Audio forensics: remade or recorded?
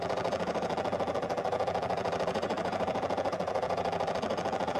remade